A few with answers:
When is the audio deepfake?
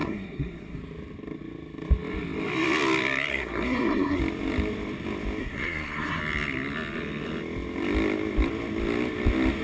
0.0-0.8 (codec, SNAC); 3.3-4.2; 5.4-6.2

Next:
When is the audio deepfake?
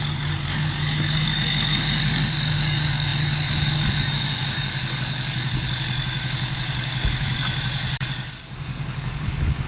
0.0-9.7 (codec, DAC)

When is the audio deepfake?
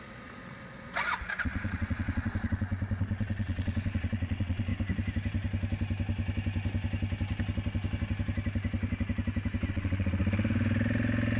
0.0-4.7 (vocoder, Vocos); 9.7-10.2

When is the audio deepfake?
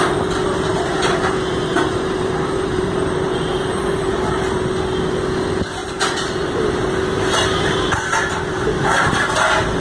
0.4-4.7 (vocoder, BigVGAN v2); 5.8-9.3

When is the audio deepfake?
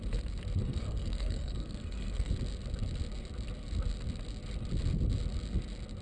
0.6-2.3 (codec, SNAC)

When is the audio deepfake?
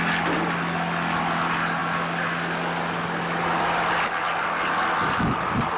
none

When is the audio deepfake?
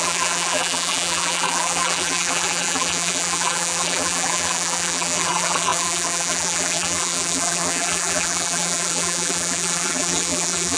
0.0-10.8 (vocoder, BigVGAN v2)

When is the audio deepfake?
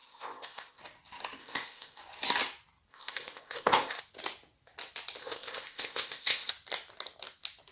0.0-0.8 (codec, ZipCodec); 1.4-2.0; 2.9-4.0; 5.2-6.5